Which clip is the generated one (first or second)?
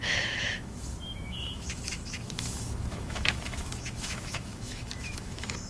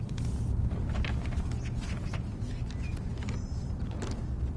first